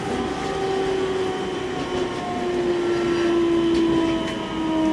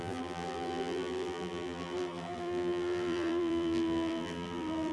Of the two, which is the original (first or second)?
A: first